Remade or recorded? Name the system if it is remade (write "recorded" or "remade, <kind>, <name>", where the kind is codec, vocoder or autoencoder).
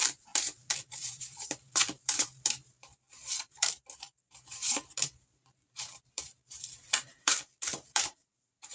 remade, vocoder, BigVGAN v2